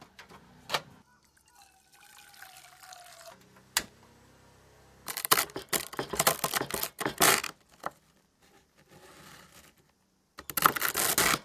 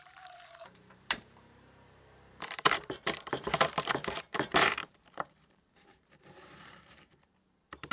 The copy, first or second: second